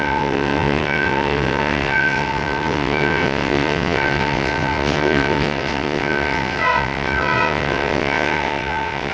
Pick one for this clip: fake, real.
fake